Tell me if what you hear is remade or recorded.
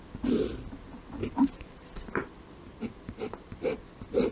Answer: recorded